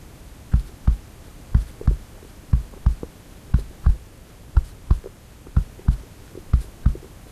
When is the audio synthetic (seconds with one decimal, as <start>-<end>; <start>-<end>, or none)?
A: 1.3-2.3; 3.9-5.6